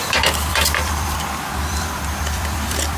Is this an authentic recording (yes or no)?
no